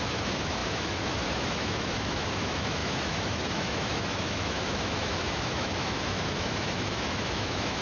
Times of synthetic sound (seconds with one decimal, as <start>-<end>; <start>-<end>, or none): 0.0-7.8